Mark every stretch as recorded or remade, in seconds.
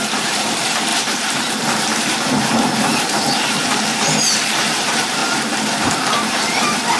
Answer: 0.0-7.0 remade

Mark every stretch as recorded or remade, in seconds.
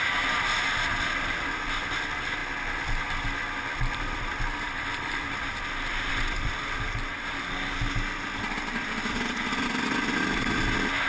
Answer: 0.0-11.1 recorded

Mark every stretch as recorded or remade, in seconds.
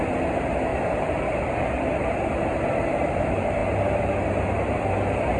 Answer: 0.0-3.6 recorded; 3.6-4.3 remade; 4.3-5.4 recorded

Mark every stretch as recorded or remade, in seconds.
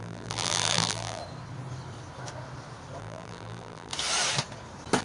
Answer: 0.0-1.2 remade; 1.2-3.0 recorded; 3.0-3.9 remade; 3.9-5.0 recorded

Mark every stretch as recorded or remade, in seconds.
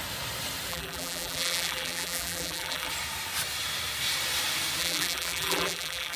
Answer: 0.0-0.7 recorded; 0.7-2.9 remade; 2.9-4.8 recorded; 4.8-6.2 remade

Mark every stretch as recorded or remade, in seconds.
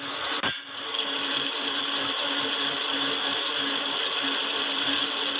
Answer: 0.0-5.4 recorded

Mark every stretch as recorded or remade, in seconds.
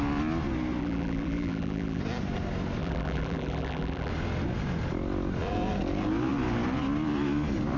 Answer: 0.0-0.8 recorded; 0.8-2.0 remade; 2.0-2.8 recorded; 2.8-4.1 remade; 4.1-7.8 recorded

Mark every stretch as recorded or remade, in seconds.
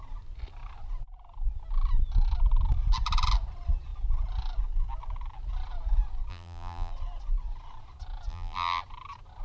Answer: 0.0-6.3 recorded; 6.3-6.9 remade; 6.9-8.3 recorded; 8.3-8.8 remade; 8.8-9.4 recorded